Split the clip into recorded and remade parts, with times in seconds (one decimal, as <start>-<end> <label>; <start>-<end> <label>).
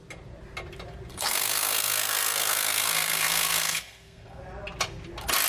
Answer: 0.0-1.1 recorded; 1.1-4.4 remade; 4.4-5.5 recorded